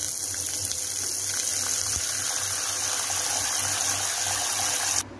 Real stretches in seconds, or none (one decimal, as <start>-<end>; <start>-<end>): 0.0-5.2